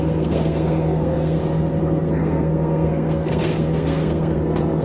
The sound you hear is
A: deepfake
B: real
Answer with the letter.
A